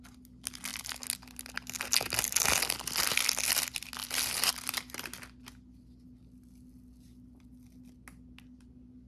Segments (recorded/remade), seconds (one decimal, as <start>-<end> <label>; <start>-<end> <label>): 0.0-9.1 recorded